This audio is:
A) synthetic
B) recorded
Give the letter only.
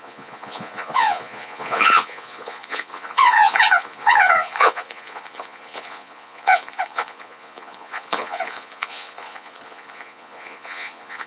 A